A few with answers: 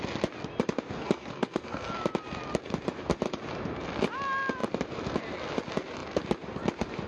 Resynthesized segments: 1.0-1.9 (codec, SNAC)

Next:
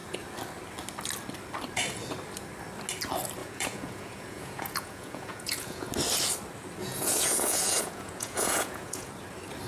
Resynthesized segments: 3.4-5.9 (vocoder, Vocos); 6.8-9.1

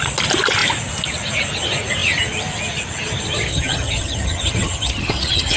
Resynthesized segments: 3.5-5.6 (vocoder, HiFi-GAN)

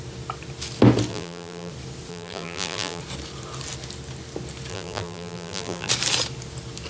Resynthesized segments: 1.1-1.7 (vocoder, BigVGAN v2); 2.1-3.0; 4.7-5.9

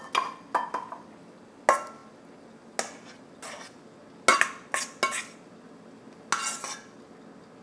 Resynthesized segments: none

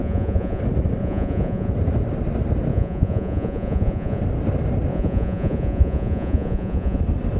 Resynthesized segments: 0.0-0.6 (vocoder, Vocos); 1.0-1.7; 2.7-4.2; 4.9-7.0

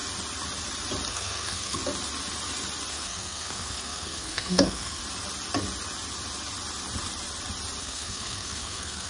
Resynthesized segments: 1.1-1.8 (codec, SNAC); 2.9-5.0; 7.8-9.1